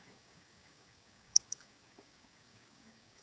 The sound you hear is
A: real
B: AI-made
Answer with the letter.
B